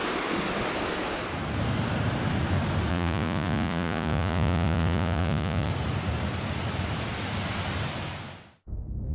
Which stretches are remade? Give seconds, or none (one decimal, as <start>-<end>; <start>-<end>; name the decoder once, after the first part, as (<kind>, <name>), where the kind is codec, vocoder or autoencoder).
2.9-5.7 (vocoder, Vocos)